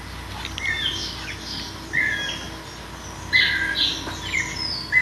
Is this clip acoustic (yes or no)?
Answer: yes